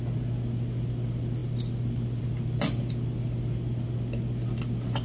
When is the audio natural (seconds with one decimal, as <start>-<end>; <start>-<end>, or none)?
0.0-5.0

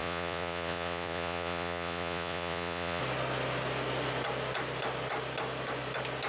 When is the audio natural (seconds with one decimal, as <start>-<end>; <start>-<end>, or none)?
3.0-6.3

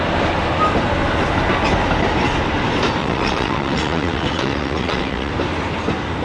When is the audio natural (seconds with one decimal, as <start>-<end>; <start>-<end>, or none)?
0.0-3.0; 5.3-6.2

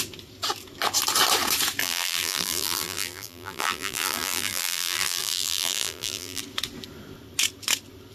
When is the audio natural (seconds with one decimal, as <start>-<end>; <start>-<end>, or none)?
0.0-1.8; 6.4-8.1

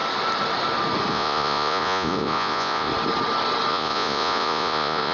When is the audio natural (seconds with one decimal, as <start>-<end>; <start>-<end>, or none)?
0.0-1.1; 2.9-3.7